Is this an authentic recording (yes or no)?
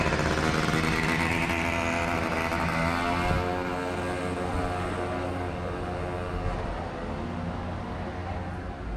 yes